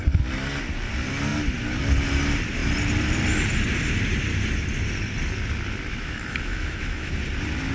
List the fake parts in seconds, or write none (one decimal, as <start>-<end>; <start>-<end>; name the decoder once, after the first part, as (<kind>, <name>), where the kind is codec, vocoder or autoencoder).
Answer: 5.9-7.1 (autoencoder, DAC-VAE)